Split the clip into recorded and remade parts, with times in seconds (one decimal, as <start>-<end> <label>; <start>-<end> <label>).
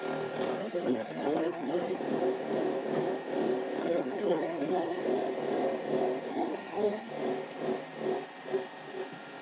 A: 0.0-0.6 recorded; 0.6-2.0 remade; 2.0-3.8 recorded; 3.8-5.0 remade; 5.0-6.3 recorded; 6.3-7.1 remade; 7.1-9.4 recorded